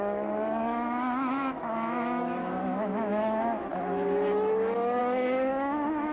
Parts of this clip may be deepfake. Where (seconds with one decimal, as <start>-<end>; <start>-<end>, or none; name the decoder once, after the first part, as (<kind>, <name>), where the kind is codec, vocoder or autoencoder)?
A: 0.0-6.1 (autoencoder, DAC-VAE)